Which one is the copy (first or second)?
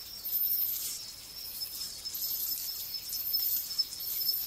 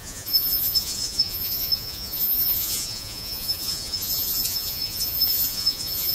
second